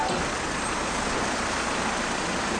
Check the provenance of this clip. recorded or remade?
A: recorded